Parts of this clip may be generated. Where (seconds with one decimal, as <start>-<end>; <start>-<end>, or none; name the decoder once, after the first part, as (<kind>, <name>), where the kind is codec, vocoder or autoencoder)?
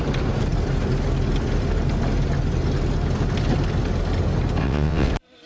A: 4.6-5.1 (vocoder, WaveNeXt)